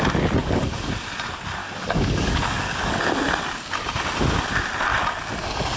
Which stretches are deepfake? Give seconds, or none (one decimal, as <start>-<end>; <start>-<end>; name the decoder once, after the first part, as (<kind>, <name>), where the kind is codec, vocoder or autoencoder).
0.4-0.9 (codec, DAC); 1.6-3.0